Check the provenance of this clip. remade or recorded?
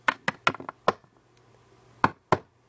recorded